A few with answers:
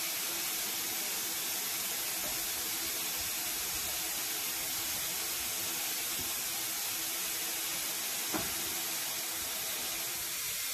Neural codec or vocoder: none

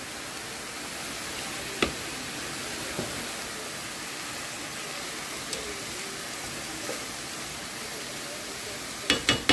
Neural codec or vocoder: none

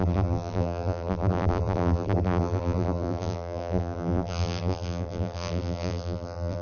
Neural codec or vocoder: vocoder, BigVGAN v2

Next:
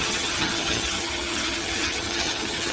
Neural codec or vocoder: vocoder, HiFi-GAN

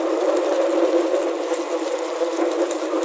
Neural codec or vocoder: none